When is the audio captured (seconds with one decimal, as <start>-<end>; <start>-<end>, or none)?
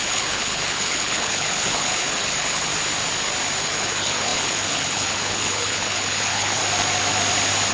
2.7-3.6; 6.6-7.7